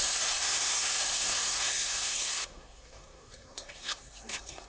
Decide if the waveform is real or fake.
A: fake